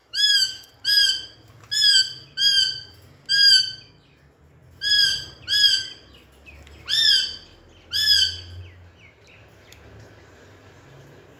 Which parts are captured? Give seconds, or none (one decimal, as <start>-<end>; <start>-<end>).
0.7-11.4